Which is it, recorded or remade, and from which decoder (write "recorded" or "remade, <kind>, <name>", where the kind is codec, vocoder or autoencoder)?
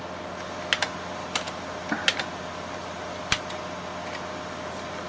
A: recorded